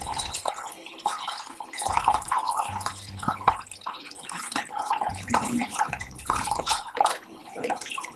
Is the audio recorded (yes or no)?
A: no